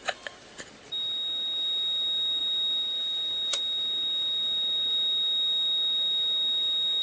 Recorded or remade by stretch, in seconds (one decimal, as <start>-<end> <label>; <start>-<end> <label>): 0.0-7.0 recorded